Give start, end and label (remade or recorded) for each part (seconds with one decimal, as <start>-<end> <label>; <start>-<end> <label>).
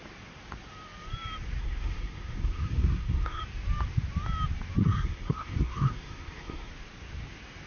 0.0-1.6 recorded; 1.6-3.4 remade; 3.4-4.8 recorded; 4.8-6.7 remade; 6.7-7.7 recorded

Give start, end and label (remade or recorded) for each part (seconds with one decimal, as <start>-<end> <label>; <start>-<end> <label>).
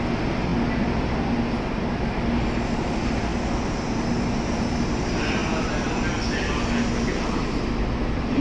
0.0-8.4 recorded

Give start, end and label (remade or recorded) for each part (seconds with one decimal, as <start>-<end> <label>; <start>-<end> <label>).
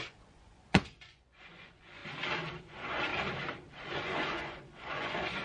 0.0-2.0 remade; 2.0-2.6 recorded; 2.6-3.1 remade; 3.1-3.7 recorded; 3.7-5.4 remade